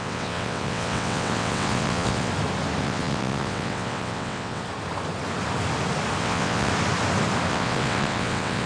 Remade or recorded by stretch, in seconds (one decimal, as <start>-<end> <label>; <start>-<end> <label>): 0.0-2.3 remade; 2.3-2.8 recorded; 2.8-4.6 remade; 4.6-6.2 recorded; 6.2-6.7 remade; 6.7-7.5 recorded; 7.5-8.7 remade